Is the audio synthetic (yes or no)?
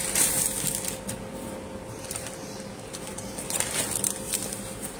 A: yes